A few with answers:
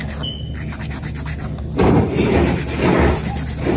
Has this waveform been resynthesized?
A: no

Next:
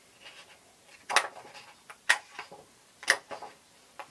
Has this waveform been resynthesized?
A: no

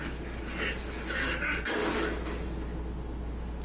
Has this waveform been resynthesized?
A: no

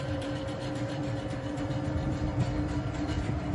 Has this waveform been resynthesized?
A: yes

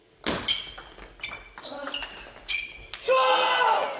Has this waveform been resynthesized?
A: no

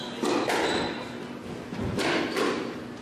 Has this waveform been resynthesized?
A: no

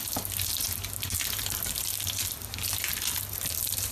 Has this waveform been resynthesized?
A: no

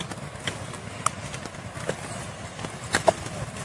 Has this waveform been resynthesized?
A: no